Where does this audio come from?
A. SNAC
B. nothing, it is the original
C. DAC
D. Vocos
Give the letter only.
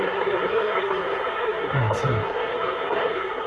A